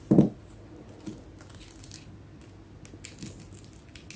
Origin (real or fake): real